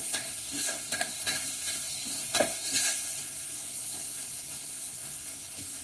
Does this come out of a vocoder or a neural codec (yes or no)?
yes